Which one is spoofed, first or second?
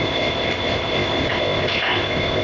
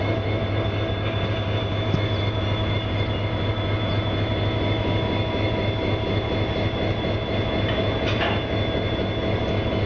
first